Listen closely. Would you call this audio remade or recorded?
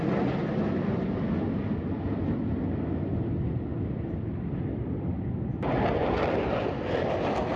recorded